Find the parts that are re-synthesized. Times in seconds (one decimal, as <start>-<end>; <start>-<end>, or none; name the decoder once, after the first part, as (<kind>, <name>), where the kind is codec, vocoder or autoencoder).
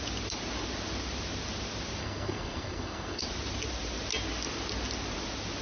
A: 2.0-3.2 (codec, SNAC)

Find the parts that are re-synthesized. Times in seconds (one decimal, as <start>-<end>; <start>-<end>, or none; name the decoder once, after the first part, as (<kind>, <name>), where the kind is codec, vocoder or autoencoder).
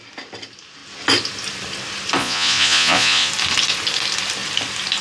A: 2.2-3.3 (vocoder, Vocos)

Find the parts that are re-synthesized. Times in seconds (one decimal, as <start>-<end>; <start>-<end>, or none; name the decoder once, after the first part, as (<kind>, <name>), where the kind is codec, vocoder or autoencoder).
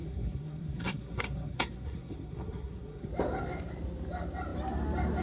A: 0.0-3.1 (codec, SNAC)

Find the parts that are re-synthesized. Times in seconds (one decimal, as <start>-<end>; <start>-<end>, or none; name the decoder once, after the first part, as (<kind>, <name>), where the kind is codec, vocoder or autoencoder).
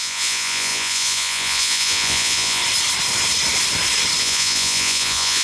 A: 0.0-2.6 (vocoder, Vocos); 4.2-5.4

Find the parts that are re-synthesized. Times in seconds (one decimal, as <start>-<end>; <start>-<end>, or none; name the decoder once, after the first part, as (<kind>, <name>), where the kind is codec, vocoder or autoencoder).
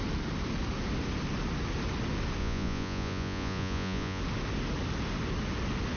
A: 2.4-4.2 (vocoder, Vocos)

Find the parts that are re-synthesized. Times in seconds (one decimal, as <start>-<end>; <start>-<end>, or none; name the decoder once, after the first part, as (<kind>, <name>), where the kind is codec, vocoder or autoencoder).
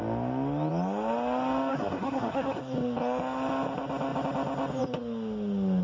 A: 1.7-2.6 (codec, SNAC)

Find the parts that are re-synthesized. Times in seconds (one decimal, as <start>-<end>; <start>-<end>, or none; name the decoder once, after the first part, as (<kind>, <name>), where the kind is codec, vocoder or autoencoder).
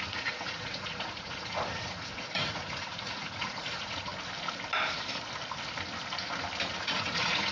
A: 0.0-4.1 (vocoder, Vocos); 6.8-7.5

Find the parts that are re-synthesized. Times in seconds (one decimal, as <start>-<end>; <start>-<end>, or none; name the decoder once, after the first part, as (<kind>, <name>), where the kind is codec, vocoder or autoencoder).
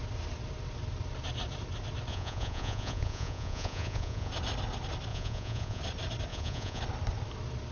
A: 2.1-4.3 (vocoder, Vocos); 5.1-5.8; 6.3-6.8